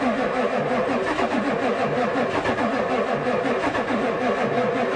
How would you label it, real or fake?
real